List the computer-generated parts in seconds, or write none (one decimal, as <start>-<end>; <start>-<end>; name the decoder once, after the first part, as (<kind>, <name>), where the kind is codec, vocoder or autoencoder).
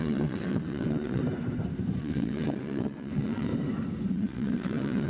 0.0-1.2 (vocoder, WaveNeXt); 2.0-3.5; 4.1-5.1